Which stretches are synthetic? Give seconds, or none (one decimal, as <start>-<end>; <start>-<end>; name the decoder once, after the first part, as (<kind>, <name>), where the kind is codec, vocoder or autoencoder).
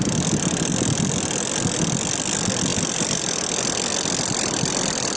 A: 2.7-3.5 (vocoder, BigVGAN v2)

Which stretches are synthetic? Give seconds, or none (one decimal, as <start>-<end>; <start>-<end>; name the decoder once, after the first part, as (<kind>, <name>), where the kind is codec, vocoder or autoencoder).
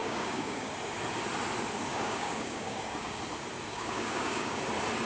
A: 0.0-0.7 (codec, DAC); 1.9-3.2; 3.7-4.6